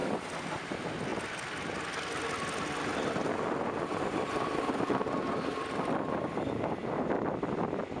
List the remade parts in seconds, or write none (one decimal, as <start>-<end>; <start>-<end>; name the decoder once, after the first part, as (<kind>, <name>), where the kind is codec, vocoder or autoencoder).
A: 0.0-0.7 (vocoder, BigVGAN v2)